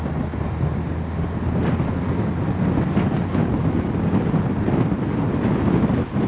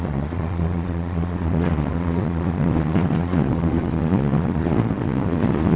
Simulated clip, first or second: second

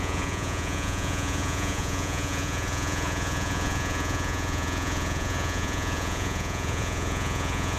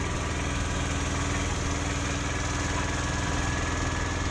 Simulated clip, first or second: first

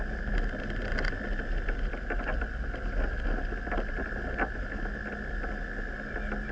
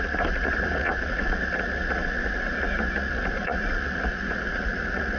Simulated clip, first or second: second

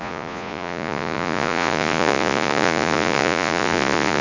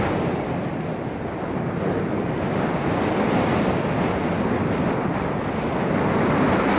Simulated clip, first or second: first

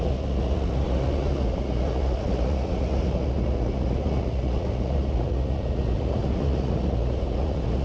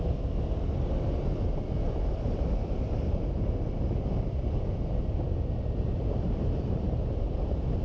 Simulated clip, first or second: first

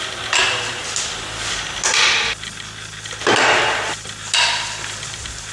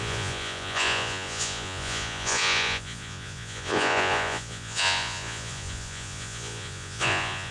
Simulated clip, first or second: second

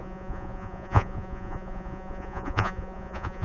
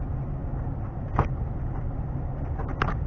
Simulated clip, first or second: first